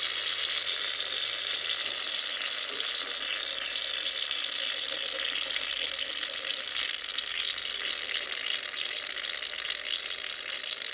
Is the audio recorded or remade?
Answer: recorded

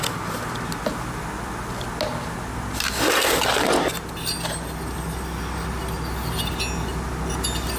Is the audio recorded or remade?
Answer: recorded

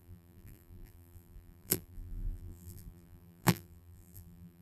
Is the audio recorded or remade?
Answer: remade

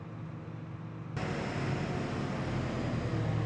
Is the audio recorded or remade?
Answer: recorded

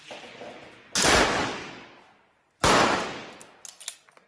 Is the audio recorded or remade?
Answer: recorded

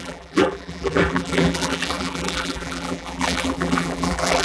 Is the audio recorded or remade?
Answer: remade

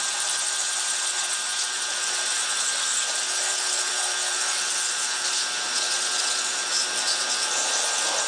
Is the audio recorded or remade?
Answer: recorded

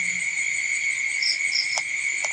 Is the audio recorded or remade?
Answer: recorded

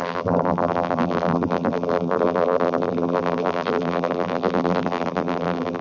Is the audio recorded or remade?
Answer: remade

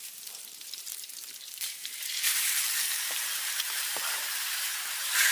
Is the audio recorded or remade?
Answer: remade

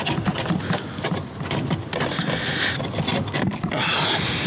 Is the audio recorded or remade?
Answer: recorded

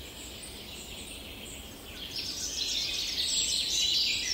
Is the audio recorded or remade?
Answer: recorded